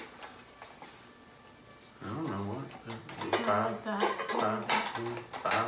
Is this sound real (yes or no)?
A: yes